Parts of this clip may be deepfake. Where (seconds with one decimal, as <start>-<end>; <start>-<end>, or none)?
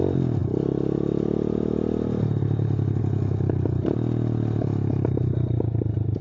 none